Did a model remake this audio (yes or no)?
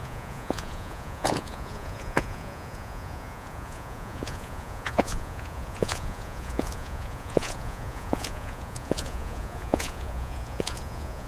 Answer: yes